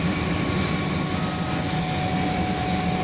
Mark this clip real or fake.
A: real